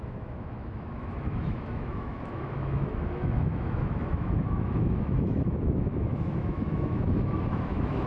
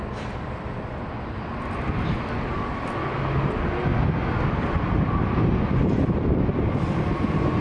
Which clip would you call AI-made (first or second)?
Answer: first